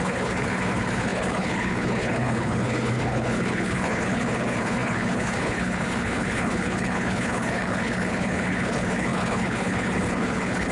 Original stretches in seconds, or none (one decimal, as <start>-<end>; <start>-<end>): none